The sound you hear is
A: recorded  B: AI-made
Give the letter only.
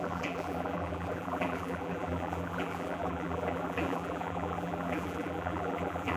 B